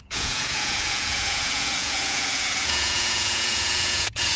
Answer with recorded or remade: remade